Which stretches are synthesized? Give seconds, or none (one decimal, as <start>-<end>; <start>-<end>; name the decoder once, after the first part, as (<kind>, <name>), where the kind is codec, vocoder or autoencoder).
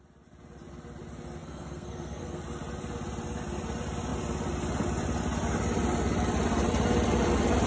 1.4-2.4 (codec, SNAC)